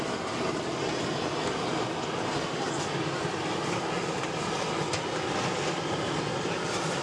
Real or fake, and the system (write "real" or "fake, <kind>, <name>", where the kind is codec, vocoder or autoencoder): real